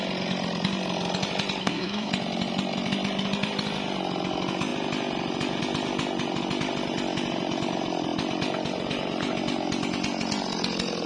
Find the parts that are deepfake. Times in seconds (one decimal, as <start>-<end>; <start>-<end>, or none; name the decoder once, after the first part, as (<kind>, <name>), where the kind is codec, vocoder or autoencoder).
1.6-2.1 (codec, SNAC)